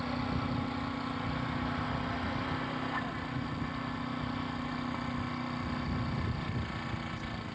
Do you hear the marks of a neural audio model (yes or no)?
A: no